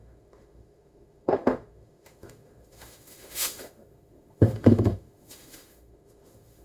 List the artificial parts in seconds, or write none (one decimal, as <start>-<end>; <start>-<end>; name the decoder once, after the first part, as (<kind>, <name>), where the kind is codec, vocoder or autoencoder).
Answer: 0.0-6.6 (autoencoder, DAC-VAE)